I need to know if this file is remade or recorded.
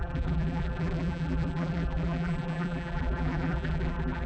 remade